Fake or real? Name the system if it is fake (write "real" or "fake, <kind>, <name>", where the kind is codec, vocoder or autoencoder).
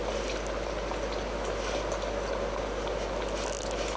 real